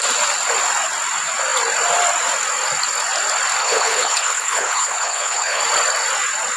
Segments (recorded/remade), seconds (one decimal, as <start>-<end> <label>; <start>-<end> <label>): 0.0-3.6 recorded; 3.6-5.6 remade; 5.6-6.6 recorded